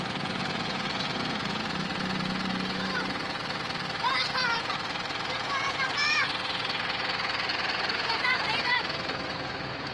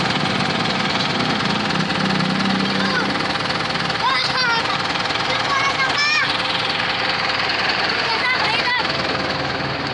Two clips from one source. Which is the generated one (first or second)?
first